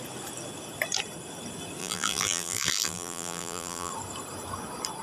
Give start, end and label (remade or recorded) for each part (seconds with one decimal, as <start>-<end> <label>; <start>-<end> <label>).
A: 0.0-1.8 recorded; 1.8-3.9 remade; 3.9-5.0 recorded